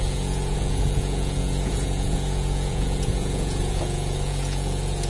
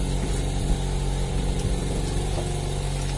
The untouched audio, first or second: second